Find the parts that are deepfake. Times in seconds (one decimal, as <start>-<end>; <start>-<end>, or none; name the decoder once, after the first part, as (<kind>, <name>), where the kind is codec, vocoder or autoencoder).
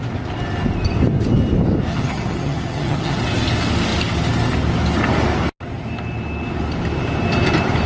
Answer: 1.9-3.2 (vocoder, HiFi-GAN)